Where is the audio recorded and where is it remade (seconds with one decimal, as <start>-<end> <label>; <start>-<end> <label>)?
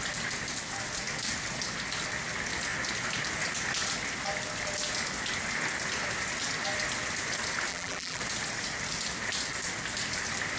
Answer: 0.0-7.7 recorded; 7.7-8.2 remade; 8.2-10.6 recorded